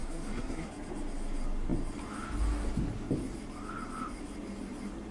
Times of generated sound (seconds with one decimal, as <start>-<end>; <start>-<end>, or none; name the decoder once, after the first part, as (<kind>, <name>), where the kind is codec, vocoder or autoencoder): 0.0-0.7 (codec, SNAC)